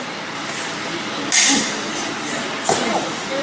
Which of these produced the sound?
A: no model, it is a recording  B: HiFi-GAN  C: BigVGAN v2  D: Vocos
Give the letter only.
A